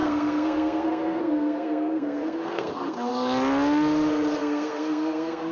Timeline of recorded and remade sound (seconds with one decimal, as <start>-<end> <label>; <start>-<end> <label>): 0.0-3.1 remade; 3.1-4.4 recorded; 4.4-5.5 remade